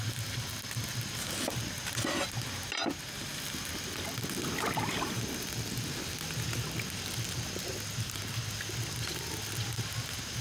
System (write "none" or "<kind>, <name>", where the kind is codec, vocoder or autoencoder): none